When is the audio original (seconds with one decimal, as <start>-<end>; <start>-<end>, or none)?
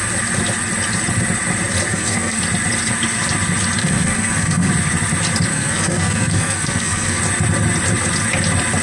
0.0-1.9; 2.4-3.8; 4.7-5.5; 7.2-8.8